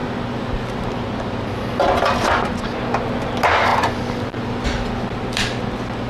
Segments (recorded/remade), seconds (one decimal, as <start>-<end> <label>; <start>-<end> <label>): 0.0-6.1 recorded